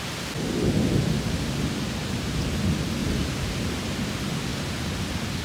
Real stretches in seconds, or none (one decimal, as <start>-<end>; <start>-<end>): 0.0-2.0; 2.5-3.0; 3.5-5.4

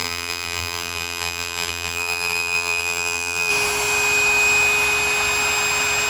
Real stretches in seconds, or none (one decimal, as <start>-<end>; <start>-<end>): 3.5-6.1

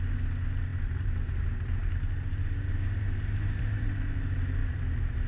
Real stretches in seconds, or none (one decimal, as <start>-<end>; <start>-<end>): 0.0-0.7; 3.9-4.6

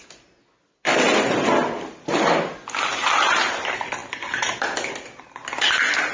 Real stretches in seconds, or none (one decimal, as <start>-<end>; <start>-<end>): 0.0-4.0; 4.6-6.1

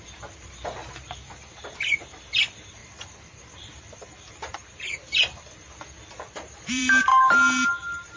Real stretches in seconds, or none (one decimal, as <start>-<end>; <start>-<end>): 0.8-1.5; 2.8-6.1; 7.1-8.2

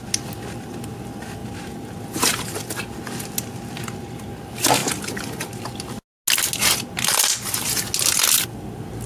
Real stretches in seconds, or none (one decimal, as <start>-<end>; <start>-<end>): 0.0-9.1

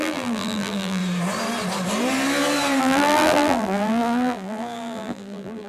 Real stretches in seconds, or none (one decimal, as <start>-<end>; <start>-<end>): 1.0-2.8

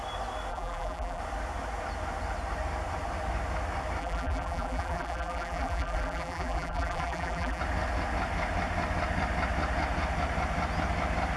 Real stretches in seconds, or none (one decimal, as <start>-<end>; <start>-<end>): 0.0-0.5; 1.2-4.0; 7.6-11.4